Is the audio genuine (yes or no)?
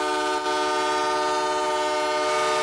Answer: yes